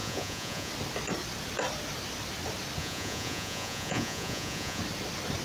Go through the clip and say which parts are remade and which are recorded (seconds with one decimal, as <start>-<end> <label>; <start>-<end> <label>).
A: 0.0-0.7 remade; 0.7-2.8 recorded; 2.8-4.8 remade; 4.8-5.4 recorded